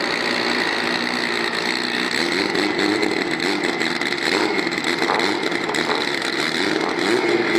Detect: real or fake real